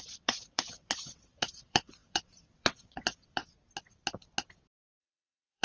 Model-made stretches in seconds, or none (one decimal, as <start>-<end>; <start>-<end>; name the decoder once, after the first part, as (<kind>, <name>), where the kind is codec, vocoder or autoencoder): 0.0-3.4 (vocoder, WaveNeXt); 5.0-5.6